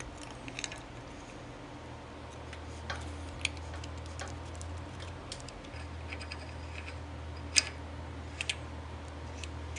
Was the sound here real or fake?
real